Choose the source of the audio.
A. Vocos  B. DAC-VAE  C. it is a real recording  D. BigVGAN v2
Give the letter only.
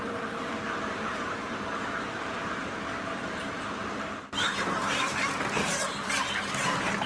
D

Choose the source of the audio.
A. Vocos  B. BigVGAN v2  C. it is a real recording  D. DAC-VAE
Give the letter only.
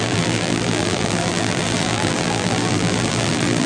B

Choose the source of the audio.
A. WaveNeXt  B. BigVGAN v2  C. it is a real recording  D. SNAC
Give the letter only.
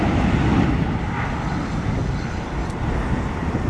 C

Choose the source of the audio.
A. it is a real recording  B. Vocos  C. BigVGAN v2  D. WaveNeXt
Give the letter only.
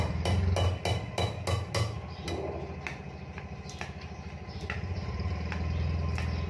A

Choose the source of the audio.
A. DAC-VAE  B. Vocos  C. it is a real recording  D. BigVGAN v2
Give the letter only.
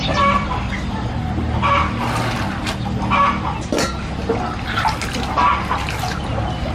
C